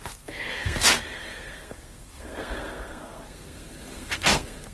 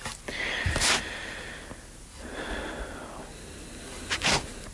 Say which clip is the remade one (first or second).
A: first